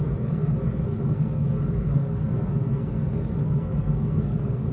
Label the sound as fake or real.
fake